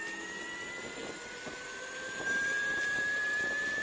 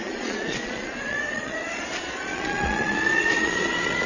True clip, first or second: first